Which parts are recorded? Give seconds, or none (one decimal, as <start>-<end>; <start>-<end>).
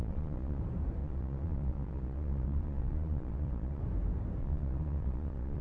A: 0.6-1.0; 3.8-4.4